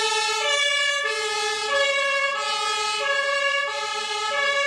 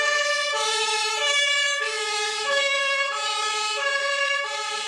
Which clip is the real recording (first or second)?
first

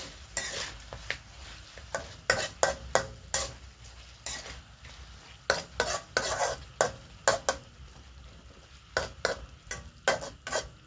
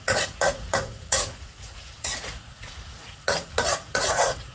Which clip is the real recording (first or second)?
first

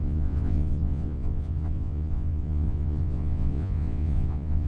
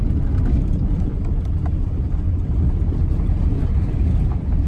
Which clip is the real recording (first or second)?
second